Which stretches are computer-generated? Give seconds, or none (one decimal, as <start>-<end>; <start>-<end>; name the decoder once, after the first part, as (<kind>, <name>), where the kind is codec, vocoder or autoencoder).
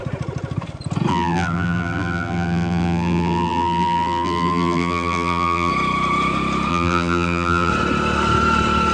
1.1-5.7 (vocoder, BigVGAN v2); 6.7-7.7